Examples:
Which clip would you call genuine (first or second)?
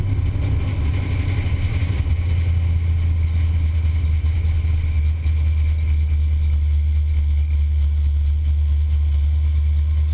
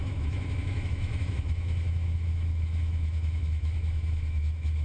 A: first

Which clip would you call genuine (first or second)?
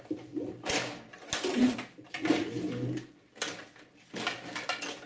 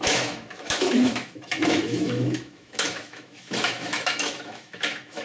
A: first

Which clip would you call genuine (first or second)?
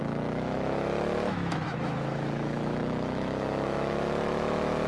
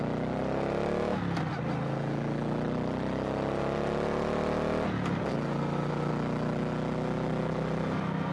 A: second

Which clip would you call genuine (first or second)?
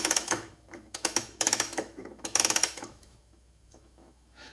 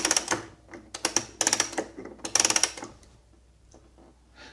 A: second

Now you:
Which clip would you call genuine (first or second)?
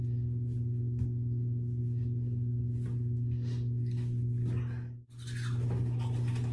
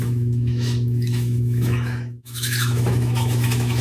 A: first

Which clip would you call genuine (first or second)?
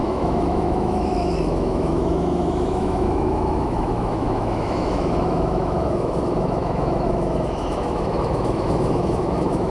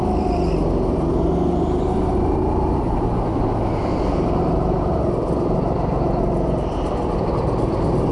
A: second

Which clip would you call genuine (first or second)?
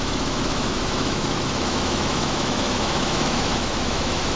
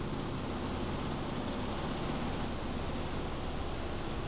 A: second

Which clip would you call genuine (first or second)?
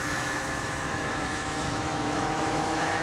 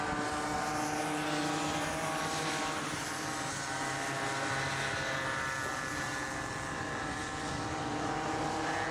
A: second